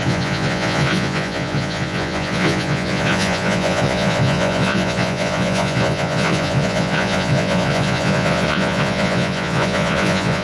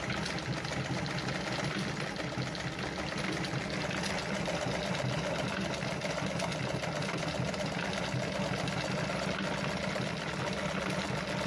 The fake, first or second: first